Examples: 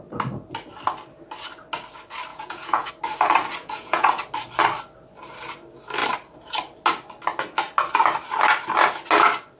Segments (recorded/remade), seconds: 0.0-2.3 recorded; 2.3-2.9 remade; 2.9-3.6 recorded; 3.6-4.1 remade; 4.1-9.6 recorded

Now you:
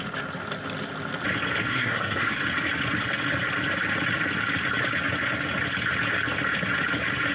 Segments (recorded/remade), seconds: 0.0-1.7 recorded; 1.7-2.4 remade; 2.4-7.3 recorded